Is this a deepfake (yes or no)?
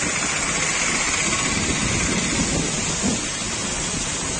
no